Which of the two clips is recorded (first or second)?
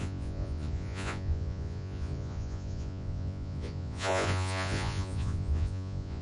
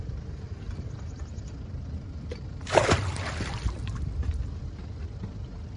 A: second